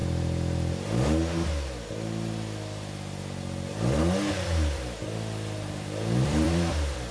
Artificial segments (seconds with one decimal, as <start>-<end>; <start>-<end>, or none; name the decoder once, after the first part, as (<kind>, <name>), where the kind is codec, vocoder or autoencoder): 4.3-7.1 (vocoder, BigVGAN v2)